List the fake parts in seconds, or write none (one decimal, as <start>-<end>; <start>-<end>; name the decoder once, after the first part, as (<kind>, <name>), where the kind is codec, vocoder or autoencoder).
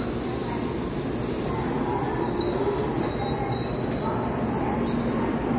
none